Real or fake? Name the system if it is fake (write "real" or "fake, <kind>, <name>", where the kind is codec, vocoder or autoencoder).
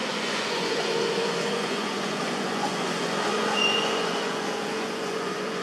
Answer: fake, vocoder, Vocos